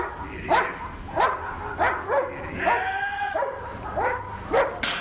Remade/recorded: recorded